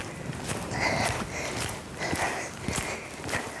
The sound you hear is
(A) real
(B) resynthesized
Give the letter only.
A